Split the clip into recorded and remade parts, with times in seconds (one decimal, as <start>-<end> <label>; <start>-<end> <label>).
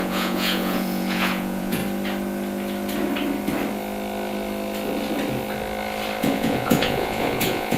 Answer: 0.0-1.8 remade; 1.8-6.2 recorded; 6.2-7.8 remade